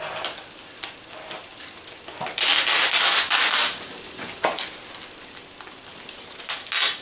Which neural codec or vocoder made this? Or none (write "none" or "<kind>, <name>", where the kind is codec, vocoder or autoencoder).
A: none